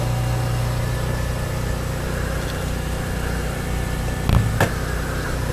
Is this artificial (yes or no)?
no